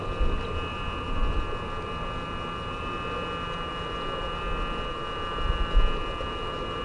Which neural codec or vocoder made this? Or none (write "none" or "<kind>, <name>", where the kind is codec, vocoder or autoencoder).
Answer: none